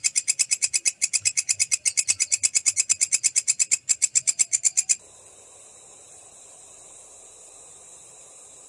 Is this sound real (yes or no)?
yes